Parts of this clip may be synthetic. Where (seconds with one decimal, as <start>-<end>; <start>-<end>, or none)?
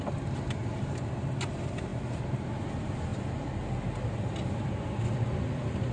1.9-2.5